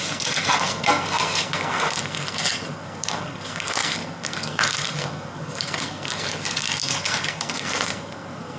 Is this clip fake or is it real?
fake